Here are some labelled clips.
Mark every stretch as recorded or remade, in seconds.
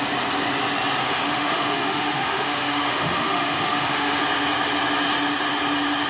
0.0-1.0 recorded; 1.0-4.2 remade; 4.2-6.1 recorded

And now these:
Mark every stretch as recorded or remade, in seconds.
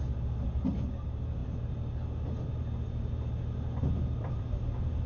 0.0-5.1 recorded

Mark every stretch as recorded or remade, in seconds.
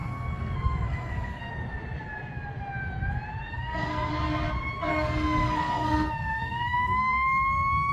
0.0-1.5 remade; 1.5-3.5 recorded; 3.5-4.1 remade; 4.1-4.9 recorded; 4.9-7.9 remade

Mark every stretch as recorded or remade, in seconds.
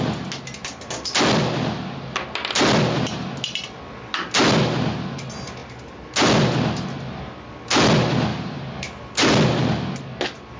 0.0-8.3 recorded; 8.3-9.0 remade; 9.0-10.6 recorded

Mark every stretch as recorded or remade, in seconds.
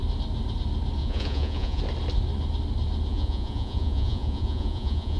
0.0-1.0 recorded; 1.0-1.8 remade; 1.8-3.1 recorded; 3.1-5.2 remade